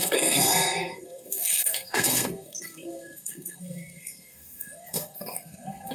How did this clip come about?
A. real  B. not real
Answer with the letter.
B